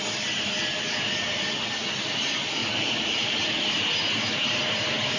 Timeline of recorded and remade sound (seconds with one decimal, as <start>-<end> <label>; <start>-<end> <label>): 0.0-2.6 recorded; 2.6-3.4 remade; 3.4-5.2 recorded